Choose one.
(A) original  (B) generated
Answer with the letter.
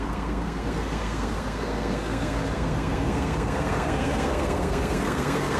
B